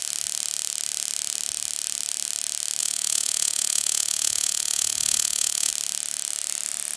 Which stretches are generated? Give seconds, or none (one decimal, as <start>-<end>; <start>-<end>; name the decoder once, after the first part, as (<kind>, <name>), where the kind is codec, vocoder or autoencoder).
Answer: 2.8-5.7 (vocoder, Vocos)